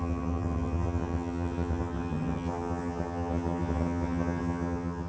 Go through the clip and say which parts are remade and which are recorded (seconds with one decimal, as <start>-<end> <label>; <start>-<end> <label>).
0.0-5.1 remade